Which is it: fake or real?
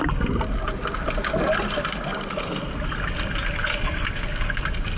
real